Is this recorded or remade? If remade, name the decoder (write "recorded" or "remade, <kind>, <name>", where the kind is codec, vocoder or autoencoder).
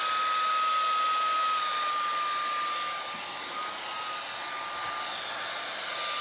recorded